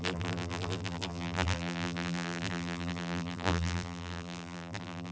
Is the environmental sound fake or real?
fake